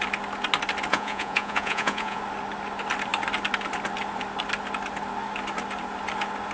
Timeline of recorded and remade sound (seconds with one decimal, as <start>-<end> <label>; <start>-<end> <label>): 0.0-0.9 recorded; 0.9-2.2 remade; 2.2-6.5 recorded